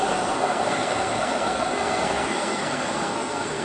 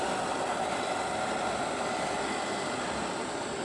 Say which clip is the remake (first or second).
first